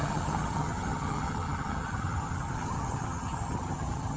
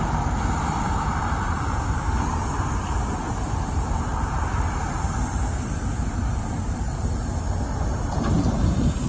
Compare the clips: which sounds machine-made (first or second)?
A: first